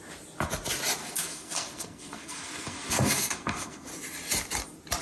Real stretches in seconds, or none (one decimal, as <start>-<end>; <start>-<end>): 0.0-1.0; 3.9-5.0